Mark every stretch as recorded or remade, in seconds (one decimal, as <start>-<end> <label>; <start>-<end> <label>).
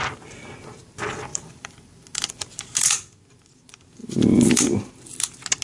0.0-1.3 recorded; 1.3-2.7 remade; 2.7-4.0 recorded; 4.0-4.9 remade; 4.9-5.6 recorded